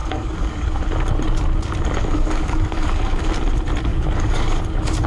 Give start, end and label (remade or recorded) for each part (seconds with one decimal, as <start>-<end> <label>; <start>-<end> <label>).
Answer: 0.0-0.8 remade; 0.8-2.0 recorded; 2.0-3.3 remade; 3.3-3.9 recorded; 3.9-4.6 remade; 4.6-5.1 recorded